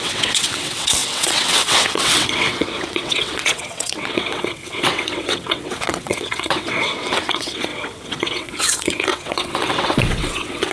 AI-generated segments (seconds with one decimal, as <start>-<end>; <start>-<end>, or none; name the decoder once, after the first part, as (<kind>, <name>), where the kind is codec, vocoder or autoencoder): 0.0-10.7 (vocoder, WaveNeXt)

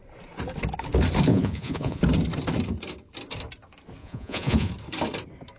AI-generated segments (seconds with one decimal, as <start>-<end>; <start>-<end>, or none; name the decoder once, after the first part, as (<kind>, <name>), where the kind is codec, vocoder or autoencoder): 1.3-2.0 (vocoder, Vocos); 4.0-4.7